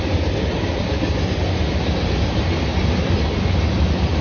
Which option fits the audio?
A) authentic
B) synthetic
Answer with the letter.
A